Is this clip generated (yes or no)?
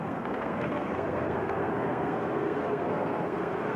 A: yes